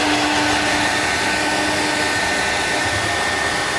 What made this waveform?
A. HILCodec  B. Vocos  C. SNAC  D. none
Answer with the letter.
D